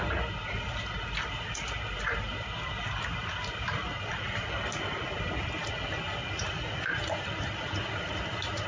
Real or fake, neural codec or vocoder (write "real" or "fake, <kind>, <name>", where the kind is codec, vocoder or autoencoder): real